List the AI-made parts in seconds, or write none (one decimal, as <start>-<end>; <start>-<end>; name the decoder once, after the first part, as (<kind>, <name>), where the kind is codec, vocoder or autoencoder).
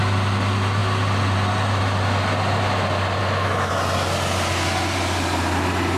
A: 3.2-3.7 (autoencoder, DAC-VAE)